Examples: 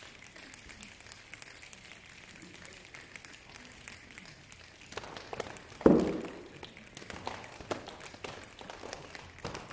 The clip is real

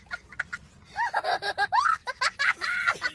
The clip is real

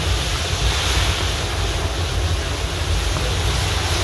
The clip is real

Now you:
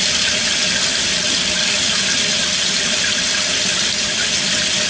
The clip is real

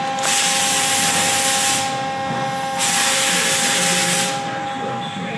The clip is real